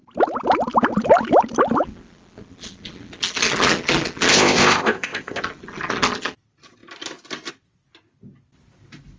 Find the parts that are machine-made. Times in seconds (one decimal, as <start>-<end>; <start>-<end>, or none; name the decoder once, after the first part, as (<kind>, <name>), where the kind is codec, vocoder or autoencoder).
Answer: 4.3-5.4 (codec, ZipCodec)